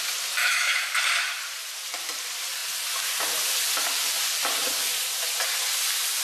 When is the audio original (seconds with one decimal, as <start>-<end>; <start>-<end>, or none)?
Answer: 0.0-0.4; 0.9-6.2